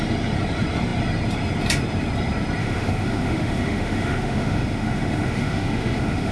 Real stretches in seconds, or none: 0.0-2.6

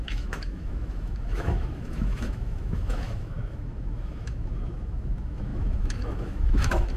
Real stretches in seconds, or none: none

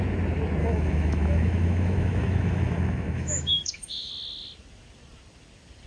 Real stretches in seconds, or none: 0.0-0.6; 4.1-5.9

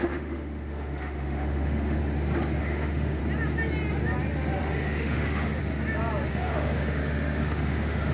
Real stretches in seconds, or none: 2.0-2.6; 3.2-4.6; 5.6-6.3

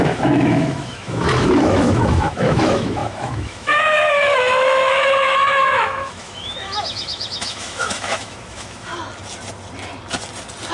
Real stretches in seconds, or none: 8.9-10.7